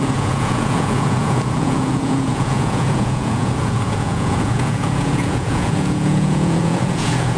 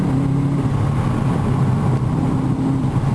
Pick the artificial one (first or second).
first